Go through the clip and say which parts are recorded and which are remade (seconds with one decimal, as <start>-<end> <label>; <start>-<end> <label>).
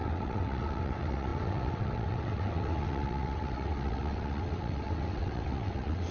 0.0-6.1 remade